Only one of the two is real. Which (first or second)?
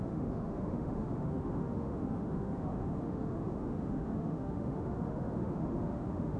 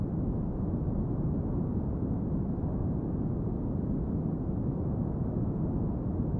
second